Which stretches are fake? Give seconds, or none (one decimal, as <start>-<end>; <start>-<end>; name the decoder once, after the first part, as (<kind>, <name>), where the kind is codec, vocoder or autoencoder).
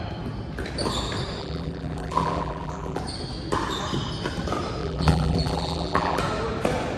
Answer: 1.4-3.0 (vocoder, BigVGAN v2); 4.8-6.2